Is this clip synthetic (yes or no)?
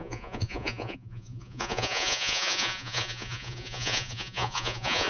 yes